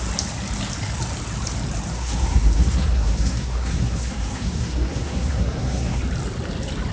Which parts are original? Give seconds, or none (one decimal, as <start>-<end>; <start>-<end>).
0.0-1.9; 6.0-6.9